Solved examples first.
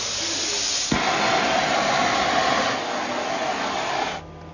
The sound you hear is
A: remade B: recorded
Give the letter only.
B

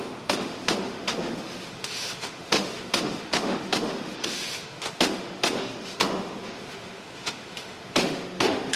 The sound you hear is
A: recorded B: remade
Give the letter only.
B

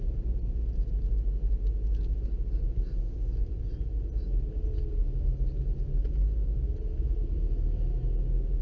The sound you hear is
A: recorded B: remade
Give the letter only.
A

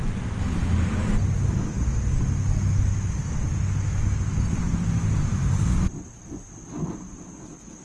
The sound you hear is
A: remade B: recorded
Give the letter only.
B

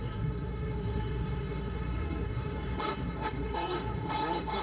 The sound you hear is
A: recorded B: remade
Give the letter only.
B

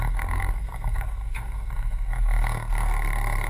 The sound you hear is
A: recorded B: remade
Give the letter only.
B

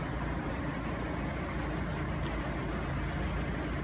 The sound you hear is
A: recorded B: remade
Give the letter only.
A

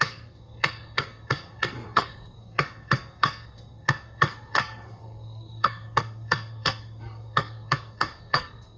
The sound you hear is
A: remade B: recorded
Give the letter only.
A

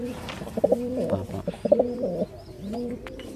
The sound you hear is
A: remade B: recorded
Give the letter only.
B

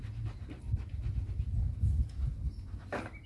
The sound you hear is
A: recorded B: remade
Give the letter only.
A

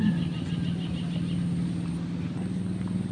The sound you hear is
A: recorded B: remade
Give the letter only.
A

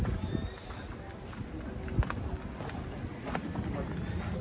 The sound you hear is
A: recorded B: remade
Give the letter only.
A